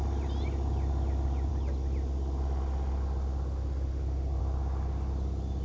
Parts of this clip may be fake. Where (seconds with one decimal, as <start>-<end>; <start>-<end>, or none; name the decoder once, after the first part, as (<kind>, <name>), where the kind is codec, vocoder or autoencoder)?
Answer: none